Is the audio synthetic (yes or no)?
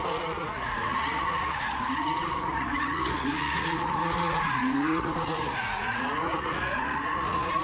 yes